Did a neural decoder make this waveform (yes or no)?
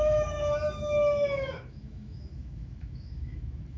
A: yes